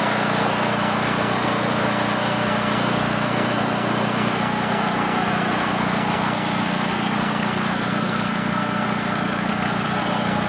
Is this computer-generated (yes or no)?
yes